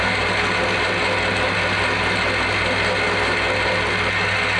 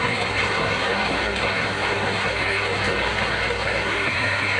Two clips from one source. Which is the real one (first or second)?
first